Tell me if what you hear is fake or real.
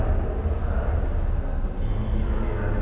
real